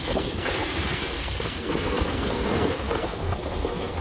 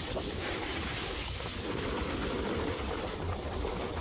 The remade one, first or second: first